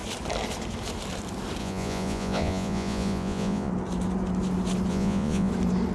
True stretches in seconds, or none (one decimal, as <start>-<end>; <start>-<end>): 0.0-1.6; 3.7-4.9; 5.5-5.9